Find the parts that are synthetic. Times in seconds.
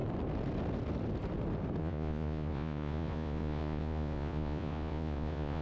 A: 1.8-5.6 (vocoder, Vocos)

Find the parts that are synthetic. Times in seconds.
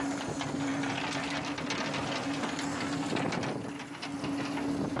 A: none